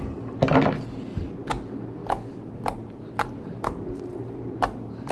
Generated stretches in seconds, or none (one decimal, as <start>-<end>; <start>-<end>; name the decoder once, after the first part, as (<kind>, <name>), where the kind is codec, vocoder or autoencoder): none